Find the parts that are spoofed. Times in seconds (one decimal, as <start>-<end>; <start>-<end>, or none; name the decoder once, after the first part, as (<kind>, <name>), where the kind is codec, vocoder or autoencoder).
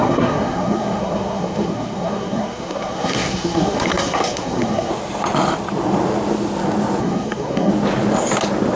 0.0-4.9 (codec, SNAC); 7.0-7.7